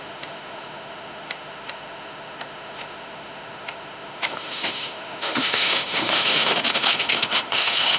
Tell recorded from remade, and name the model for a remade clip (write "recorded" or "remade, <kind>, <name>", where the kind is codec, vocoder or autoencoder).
remade, autoencoder, DAC-VAE